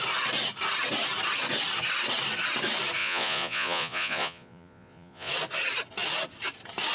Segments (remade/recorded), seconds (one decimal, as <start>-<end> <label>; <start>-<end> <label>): 0.0-3.0 recorded; 3.0-5.3 remade; 5.3-6.9 recorded